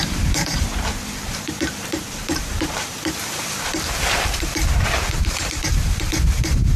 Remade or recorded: remade